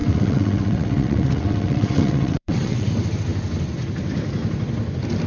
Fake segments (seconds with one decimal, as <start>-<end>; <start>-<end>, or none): 0.0-2.9